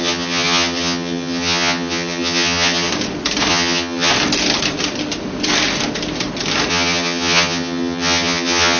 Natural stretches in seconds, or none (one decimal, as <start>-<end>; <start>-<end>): 2.9-3.5; 4.1-6.7

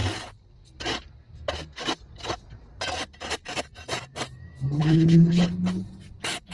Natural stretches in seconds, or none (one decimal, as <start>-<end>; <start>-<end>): 0.0-4.8; 5.5-6.5

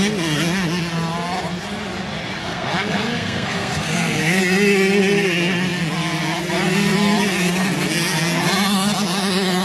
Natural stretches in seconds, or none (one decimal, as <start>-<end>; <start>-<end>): 0.0-2.4; 4.4-9.6

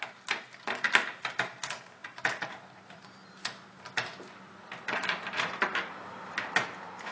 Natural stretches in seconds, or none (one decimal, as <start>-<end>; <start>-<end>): 0.0-7.1

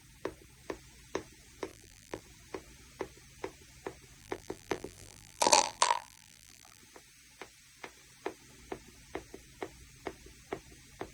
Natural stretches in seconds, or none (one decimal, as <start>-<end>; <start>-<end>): 0.0-1.7; 2.2-4.2; 6.8-11.1

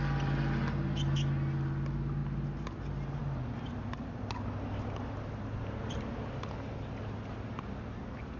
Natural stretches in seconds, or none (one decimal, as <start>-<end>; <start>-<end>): 0.0-8.4